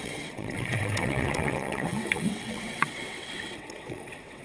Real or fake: fake